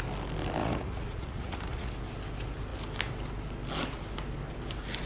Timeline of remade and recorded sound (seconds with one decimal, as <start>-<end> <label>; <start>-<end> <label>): 0.0-0.6 recorded; 0.6-1.9 remade; 1.9-5.1 recorded